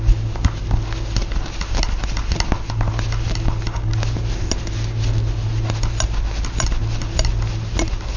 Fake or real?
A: real